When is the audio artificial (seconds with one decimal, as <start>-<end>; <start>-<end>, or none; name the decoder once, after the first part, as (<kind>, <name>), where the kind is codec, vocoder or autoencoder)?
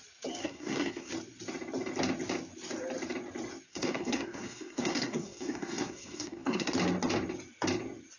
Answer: 0.4-1.1 (codec, SNAC); 3.7-6.7